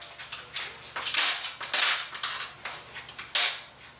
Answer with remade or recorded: recorded